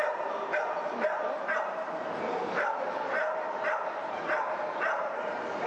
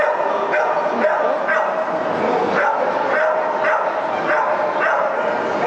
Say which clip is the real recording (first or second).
second